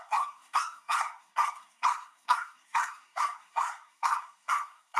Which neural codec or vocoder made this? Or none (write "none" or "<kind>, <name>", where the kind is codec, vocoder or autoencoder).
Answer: codec, SNAC